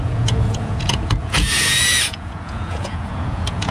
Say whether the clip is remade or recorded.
remade